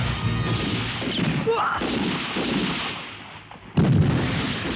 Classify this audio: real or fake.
real